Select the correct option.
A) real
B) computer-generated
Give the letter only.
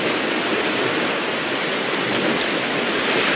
A